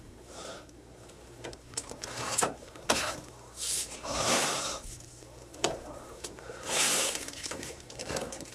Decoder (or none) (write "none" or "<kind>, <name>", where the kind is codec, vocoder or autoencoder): codec, SNAC